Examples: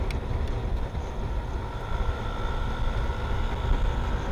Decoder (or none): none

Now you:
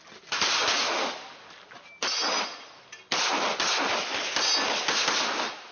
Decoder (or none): none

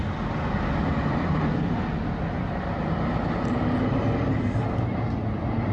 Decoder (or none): none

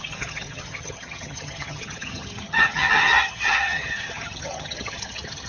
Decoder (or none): vocoder, HiFi-GAN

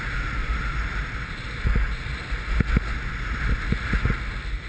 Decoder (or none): none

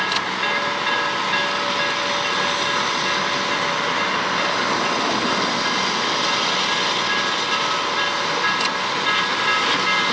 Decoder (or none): none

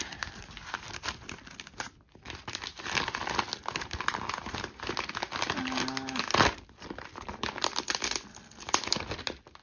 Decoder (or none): none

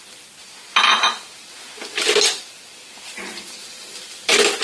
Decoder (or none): none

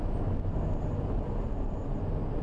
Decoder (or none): none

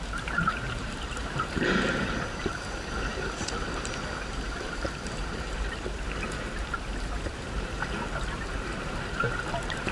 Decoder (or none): vocoder, BigVGAN v2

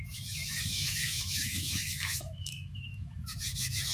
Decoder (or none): autoencoder, DAC-VAE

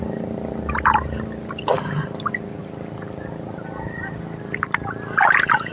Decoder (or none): none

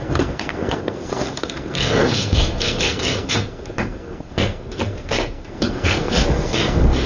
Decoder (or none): codec, SNAC